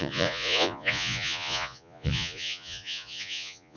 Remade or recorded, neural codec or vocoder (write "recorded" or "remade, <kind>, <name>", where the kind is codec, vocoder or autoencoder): remade, vocoder, Vocos